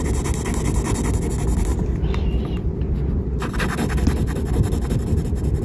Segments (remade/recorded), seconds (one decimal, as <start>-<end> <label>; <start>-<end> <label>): 0.0-5.6 recorded